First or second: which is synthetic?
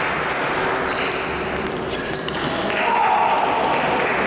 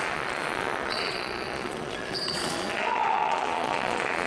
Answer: second